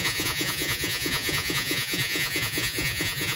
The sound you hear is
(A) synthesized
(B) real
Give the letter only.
A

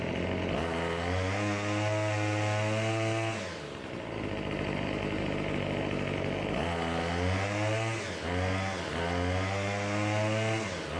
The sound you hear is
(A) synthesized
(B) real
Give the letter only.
B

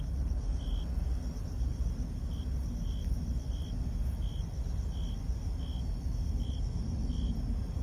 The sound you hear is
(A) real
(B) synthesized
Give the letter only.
A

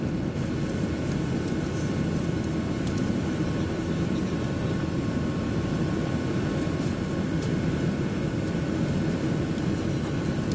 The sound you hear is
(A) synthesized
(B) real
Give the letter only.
B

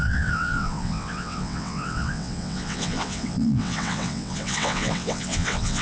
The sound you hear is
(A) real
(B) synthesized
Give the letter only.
B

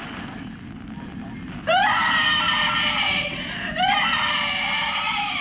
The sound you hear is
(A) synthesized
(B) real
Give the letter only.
B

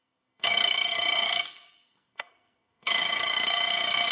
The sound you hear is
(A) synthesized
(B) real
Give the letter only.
A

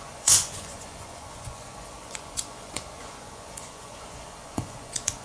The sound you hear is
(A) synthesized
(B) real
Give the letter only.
A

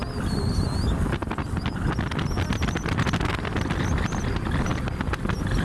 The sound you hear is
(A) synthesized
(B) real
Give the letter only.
B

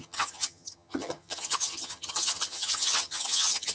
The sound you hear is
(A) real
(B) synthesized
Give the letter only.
B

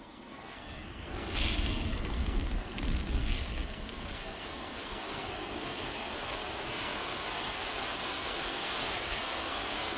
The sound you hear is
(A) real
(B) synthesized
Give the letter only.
B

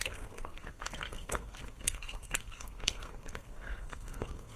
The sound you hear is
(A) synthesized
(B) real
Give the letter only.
A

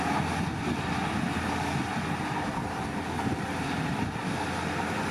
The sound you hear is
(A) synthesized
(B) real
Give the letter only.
B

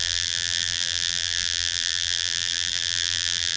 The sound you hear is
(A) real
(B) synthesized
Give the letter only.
B